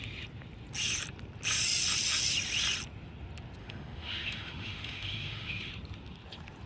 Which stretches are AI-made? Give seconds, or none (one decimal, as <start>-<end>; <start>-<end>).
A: 3.6-5.7